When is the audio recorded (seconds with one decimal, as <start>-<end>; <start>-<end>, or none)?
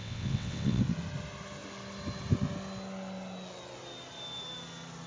0.8-5.1